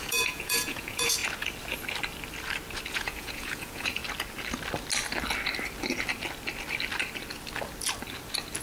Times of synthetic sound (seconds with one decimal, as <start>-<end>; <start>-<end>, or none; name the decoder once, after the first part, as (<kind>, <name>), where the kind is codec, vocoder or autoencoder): 0.0-1.2 (vocoder, Vocos); 2.9-4.0